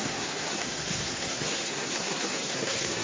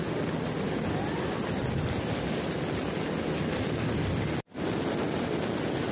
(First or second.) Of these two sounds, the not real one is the first